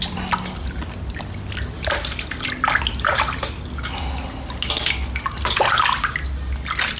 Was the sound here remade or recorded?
recorded